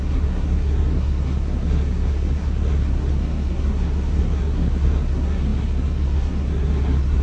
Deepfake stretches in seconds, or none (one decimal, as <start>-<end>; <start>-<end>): 0.0-7.2